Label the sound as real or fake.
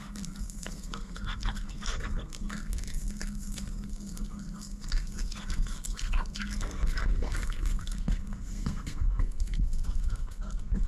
fake